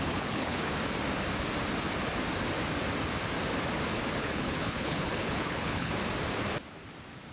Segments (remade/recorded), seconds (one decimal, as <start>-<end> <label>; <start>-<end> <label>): 0.0-0.7 remade; 0.7-4.2 recorded; 4.2-6.0 remade; 6.0-7.3 recorded